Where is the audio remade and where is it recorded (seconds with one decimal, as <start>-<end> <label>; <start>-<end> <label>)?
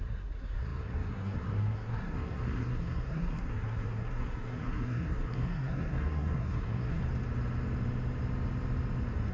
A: 0.0-7.0 remade; 7.0-9.3 recorded